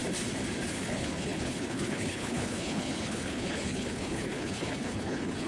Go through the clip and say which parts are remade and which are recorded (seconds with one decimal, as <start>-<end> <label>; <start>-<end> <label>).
0.0-0.7 recorded; 0.7-5.5 remade